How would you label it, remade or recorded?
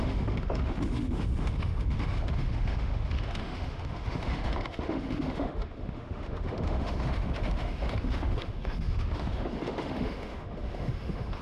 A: remade